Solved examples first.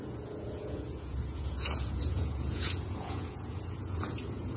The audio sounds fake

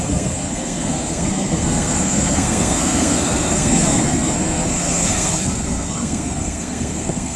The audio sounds fake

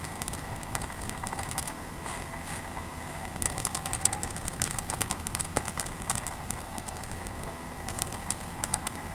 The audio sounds fake